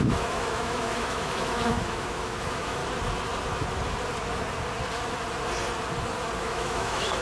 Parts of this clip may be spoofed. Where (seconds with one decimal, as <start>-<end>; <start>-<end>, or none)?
0.0-2.8; 6.4-7.2